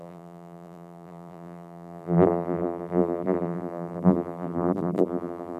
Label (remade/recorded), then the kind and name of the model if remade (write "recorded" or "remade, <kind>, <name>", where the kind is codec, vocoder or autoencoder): remade, vocoder, BigVGAN v2